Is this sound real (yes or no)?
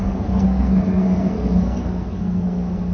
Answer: no